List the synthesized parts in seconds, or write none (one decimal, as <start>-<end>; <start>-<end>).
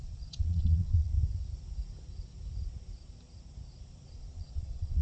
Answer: 0.0-1.1; 4.1-5.0